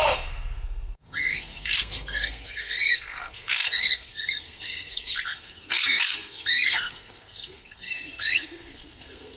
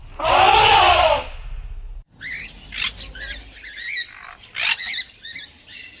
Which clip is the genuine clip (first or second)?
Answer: second